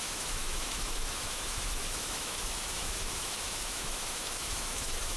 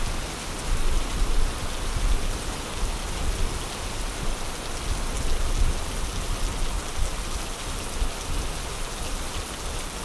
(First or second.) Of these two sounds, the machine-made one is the first